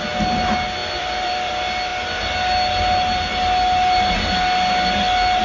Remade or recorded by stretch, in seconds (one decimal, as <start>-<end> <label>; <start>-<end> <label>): 0.0-0.8 recorded; 0.8-1.5 remade; 1.5-5.4 recorded